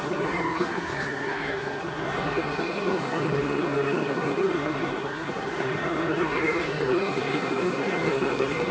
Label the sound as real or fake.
fake